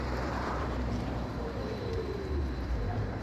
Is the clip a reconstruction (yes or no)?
yes